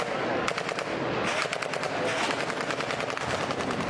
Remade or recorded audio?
recorded